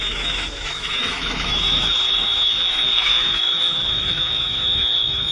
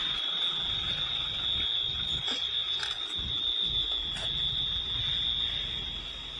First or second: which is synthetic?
first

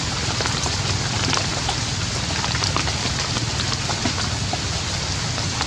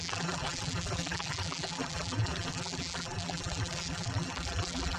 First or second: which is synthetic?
second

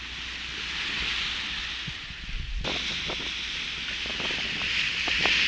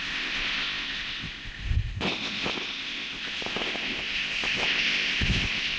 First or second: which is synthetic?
second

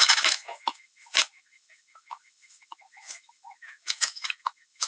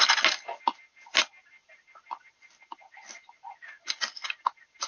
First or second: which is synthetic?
first